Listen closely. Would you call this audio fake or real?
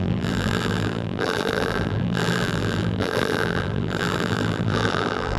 fake